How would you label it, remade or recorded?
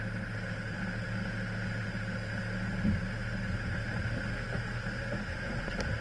recorded